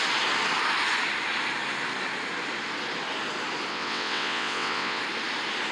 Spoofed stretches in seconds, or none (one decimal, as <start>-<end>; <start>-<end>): 3.7-5.0

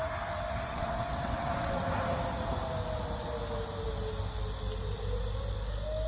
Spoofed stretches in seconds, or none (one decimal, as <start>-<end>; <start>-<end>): 0.5-1.8

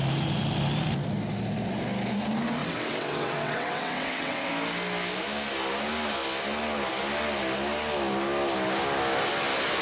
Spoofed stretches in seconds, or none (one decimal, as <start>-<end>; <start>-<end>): 2.6-4.5

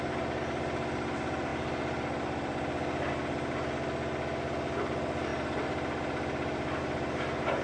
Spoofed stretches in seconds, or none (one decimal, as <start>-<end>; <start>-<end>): none

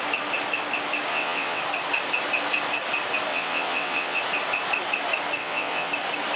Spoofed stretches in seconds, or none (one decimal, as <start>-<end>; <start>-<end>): 1.1-1.6; 3.3-4.2; 5.4-5.9